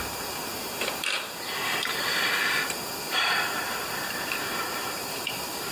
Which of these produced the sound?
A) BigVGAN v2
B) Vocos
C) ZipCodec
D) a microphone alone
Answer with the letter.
A